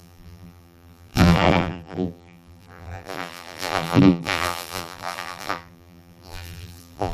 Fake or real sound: fake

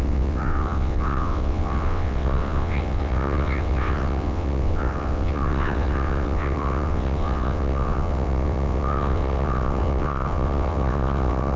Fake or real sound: fake